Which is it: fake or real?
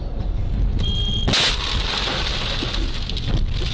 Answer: real